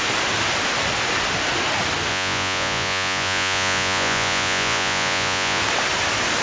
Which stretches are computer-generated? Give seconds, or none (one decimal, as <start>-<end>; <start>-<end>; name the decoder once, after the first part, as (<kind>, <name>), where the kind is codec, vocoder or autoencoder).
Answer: 2.1-5.6 (vocoder, Vocos)